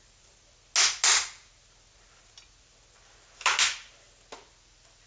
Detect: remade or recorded recorded